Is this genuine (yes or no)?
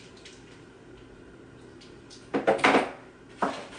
yes